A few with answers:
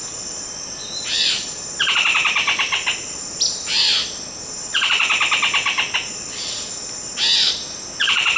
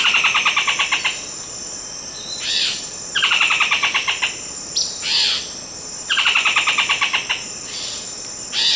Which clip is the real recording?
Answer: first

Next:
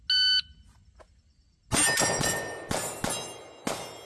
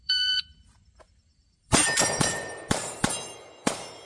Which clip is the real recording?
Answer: first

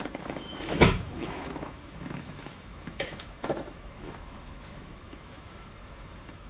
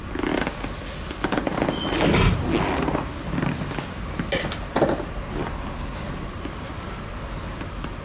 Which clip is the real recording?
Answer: second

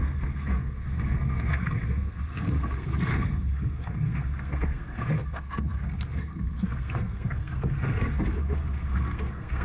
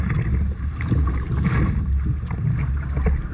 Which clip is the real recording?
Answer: second